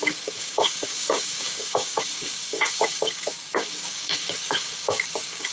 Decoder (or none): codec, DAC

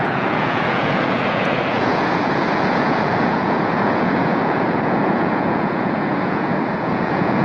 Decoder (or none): vocoder, Vocos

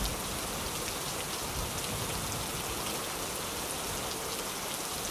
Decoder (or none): none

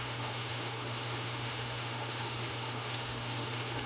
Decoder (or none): autoencoder, DAC-VAE